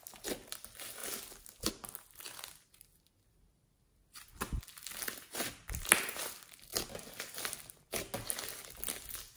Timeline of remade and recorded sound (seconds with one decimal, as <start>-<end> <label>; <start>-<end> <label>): 0.0-9.4 recorded